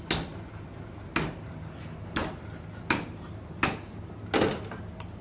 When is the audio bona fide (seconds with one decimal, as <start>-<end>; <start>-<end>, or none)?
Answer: 0.0-5.2

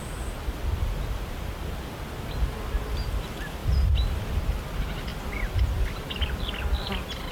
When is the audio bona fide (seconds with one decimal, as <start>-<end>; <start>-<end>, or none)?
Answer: 0.0-7.3